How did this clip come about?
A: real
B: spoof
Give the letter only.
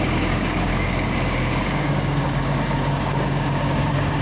B